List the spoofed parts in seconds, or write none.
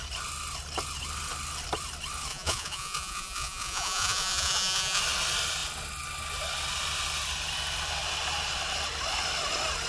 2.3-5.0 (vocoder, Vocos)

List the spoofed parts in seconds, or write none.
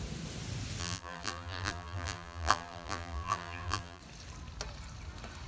0.8-4.0 (vocoder, BigVGAN v2)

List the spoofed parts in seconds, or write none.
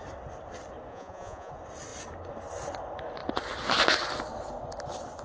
0.9-1.5 (vocoder, Vocos)